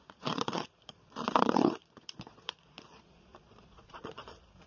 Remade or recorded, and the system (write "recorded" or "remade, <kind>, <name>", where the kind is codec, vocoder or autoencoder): remade, vocoder, Vocos